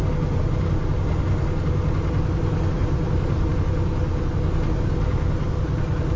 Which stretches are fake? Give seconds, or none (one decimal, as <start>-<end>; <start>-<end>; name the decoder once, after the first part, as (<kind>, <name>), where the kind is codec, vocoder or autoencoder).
2.8-3.5 (vocoder, BigVGAN v2)